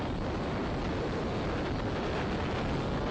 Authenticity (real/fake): real